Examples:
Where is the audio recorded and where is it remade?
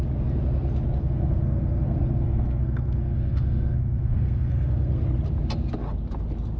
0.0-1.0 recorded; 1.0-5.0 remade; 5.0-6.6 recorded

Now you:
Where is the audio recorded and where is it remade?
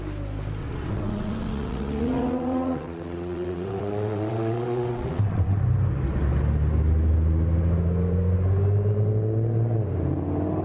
0.0-0.6 recorded; 0.6-5.6 remade; 5.6-10.6 recorded